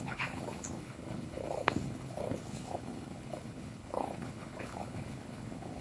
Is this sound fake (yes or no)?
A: yes